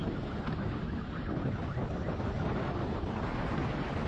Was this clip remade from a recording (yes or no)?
no